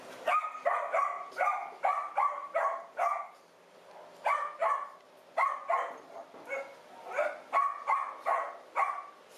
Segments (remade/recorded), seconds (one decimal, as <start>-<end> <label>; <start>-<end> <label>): 0.0-2.4 recorded; 2.4-3.6 remade; 3.6-9.4 recorded